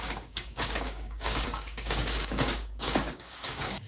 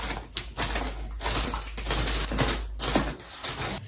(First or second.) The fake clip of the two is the first